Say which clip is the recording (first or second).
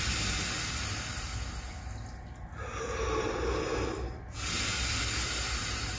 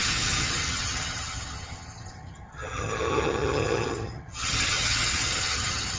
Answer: first